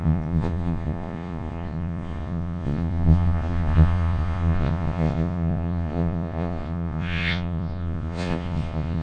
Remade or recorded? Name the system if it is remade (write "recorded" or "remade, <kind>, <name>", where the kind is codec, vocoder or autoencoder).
remade, vocoder, Vocos